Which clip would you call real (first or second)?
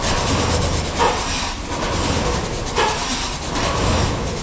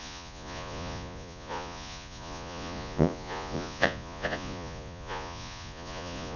first